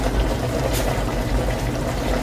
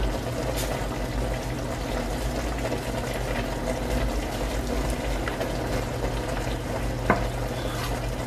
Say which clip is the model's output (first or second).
first